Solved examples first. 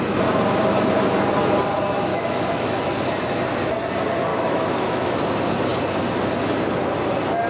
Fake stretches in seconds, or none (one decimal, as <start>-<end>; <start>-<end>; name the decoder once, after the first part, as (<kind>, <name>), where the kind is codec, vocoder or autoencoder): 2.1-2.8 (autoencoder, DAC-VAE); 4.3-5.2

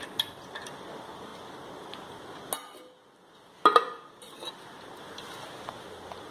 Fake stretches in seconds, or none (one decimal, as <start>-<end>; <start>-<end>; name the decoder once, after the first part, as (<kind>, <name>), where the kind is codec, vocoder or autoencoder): none

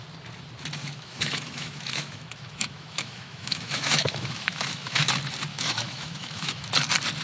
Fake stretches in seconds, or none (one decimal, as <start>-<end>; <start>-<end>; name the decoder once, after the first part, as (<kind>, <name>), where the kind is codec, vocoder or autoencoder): 0.8-5.1 (autoencoder, DAC-VAE); 5.5-6.7